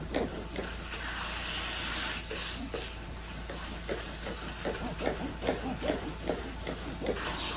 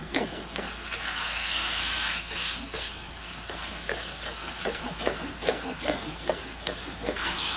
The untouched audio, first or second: first